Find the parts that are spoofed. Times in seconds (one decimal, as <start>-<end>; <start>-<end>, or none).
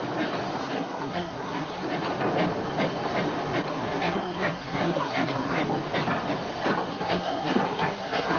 0.6-1.8; 3.7-5.6; 6.9-8.4